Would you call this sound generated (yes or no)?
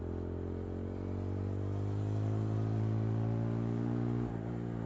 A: no